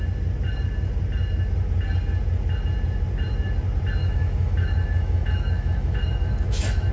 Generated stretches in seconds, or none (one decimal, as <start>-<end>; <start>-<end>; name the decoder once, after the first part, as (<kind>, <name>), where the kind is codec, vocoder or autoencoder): 4.0-6.9 (autoencoder, DAC-VAE)